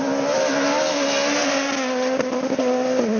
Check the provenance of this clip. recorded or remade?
recorded